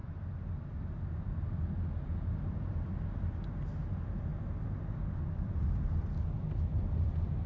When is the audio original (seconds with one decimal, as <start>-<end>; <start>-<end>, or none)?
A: 0.0-7.5